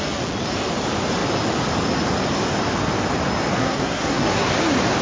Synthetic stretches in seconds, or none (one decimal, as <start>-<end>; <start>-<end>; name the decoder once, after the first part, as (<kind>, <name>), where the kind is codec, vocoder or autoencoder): 3.6-4.5 (codec, SNAC)